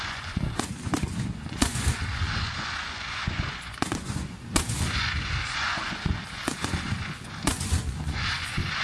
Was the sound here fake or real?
fake